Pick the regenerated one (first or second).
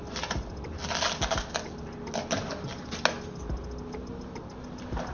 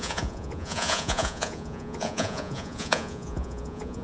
second